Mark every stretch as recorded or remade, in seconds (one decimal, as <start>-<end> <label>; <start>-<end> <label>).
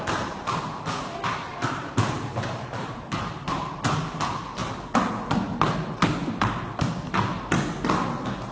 0.0-1.5 recorded; 1.5-3.7 remade; 3.7-8.5 recorded